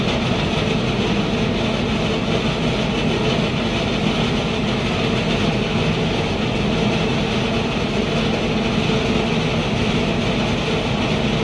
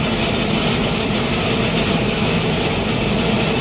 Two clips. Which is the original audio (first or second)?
first